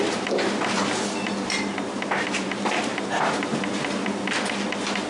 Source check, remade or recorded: recorded